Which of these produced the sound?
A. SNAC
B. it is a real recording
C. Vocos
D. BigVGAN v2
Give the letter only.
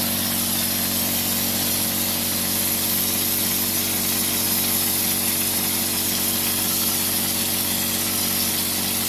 B